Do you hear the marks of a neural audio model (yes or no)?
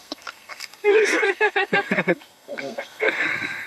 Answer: yes